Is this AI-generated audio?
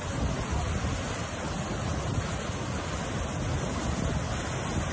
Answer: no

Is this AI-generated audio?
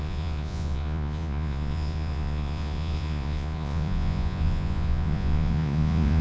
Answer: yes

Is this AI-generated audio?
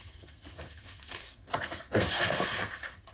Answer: yes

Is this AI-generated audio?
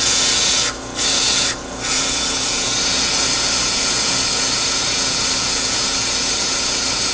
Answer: yes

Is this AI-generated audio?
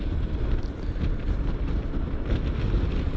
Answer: no